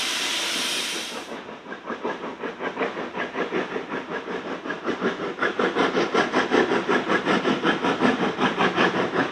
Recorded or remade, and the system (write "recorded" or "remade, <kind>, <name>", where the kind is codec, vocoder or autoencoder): remade, vocoder, BigVGAN v2